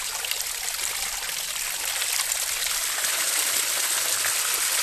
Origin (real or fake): real